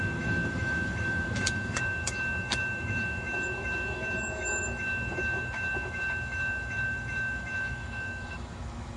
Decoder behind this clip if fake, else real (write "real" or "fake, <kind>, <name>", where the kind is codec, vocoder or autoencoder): fake, autoencoder, DAC-VAE